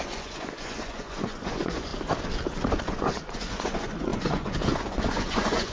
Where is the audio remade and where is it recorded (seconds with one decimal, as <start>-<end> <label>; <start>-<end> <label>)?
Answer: 0.0-1.9 remade; 1.9-2.9 recorded; 2.9-5.7 remade